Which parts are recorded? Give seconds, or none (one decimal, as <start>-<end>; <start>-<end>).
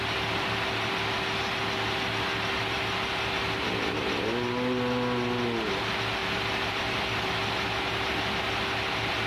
0.0-6.2; 7.3-9.3